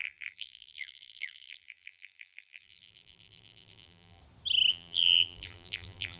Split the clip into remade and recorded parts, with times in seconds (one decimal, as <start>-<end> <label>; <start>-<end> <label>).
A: 0.0-4.2 remade; 4.2-4.7 recorded; 4.7-6.2 remade